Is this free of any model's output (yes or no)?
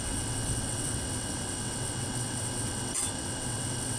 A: no